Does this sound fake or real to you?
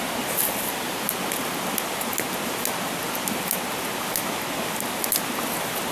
real